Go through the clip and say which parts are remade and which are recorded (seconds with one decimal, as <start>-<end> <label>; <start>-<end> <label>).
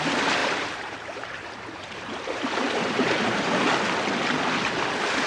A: 0.0-0.4 recorded; 0.4-3.6 remade; 3.6-5.3 recorded